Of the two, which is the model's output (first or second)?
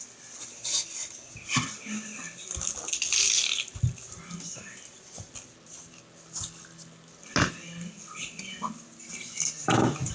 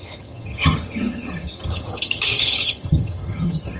second